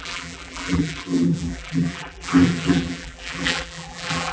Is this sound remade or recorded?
remade